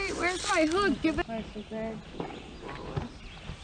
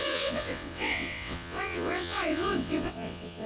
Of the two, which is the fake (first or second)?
second